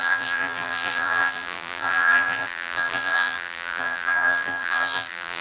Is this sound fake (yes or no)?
yes